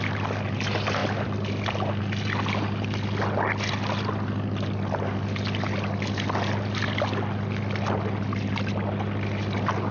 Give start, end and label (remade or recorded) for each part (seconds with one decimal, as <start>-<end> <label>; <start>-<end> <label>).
0.0-1.0 recorded; 1.0-2.0 remade; 2.0-9.9 recorded